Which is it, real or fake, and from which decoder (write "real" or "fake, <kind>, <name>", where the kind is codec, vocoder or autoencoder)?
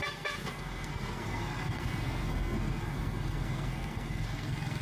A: fake, codec, SNAC